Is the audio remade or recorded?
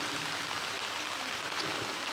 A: recorded